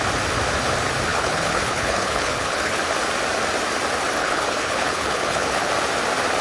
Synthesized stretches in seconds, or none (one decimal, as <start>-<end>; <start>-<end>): 1.1-2.8; 4.2-5.7